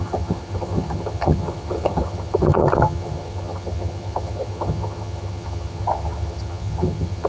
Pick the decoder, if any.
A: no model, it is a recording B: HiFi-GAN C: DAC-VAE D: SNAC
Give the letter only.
B